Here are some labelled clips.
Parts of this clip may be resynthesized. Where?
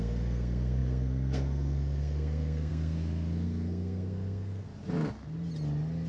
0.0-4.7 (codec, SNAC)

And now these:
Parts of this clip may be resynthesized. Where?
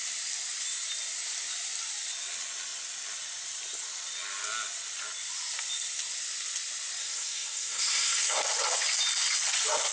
7.0-8.4 (codec, SNAC)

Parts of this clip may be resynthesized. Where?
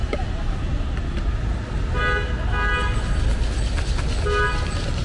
none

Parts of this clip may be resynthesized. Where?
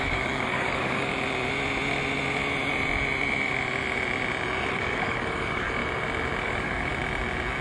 0.0-1.1 (codec, DAC); 4.7-5.8; 6.4-6.9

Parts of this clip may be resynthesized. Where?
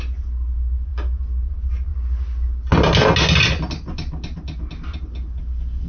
none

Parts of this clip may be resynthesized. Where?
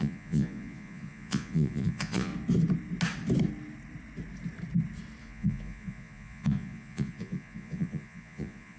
0.0-2.3 (vocoder, Vocos); 5.2-8.8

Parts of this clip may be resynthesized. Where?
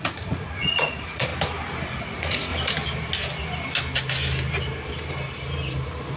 0.0-1.3 (vocoder, Vocos); 2.0-2.5